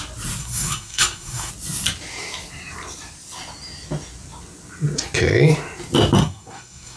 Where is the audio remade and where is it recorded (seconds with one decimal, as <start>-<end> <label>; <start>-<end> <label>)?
0.0-0.4 recorded; 0.4-1.5 remade; 1.5-6.2 recorded; 6.2-7.0 remade